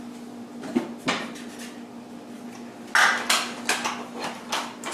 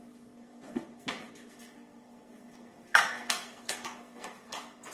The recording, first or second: first